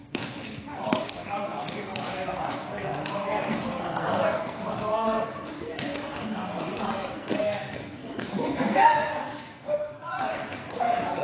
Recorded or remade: remade